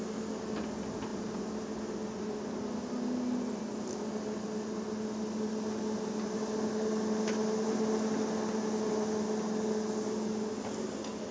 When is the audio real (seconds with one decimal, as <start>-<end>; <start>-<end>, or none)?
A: 0.0-11.3